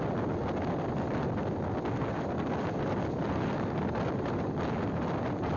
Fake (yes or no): no